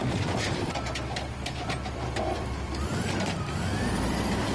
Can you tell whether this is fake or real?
fake